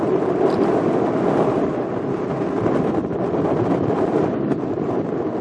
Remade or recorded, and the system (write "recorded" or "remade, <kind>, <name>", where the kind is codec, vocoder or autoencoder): recorded